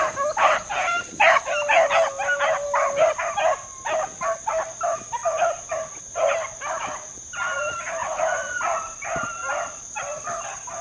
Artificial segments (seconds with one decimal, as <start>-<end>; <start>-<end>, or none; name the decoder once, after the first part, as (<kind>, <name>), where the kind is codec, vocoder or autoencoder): 8.0-8.6 (vocoder, Vocos)